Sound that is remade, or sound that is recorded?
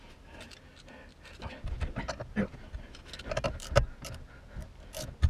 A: recorded